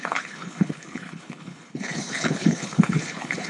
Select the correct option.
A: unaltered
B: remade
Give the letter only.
B